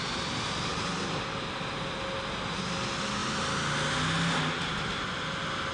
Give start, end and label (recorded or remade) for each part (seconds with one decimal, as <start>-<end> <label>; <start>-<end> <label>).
0.0-0.7 recorded; 0.7-1.6 remade; 1.6-5.7 recorded